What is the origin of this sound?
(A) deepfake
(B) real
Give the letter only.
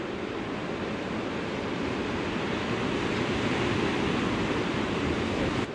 B